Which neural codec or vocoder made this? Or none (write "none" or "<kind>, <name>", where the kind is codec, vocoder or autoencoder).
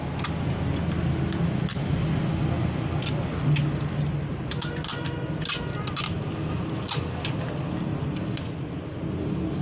none